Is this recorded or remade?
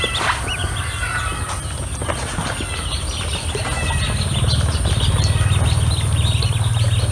recorded